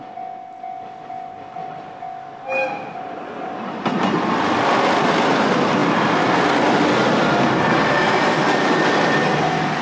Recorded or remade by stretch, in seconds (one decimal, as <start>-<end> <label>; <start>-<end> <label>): 0.0-9.8 recorded